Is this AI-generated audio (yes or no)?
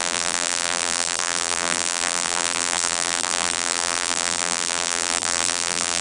yes